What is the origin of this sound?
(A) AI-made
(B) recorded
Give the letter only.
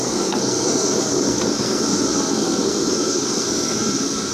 A